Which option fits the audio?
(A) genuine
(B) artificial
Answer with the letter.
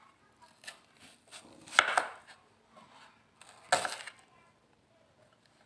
A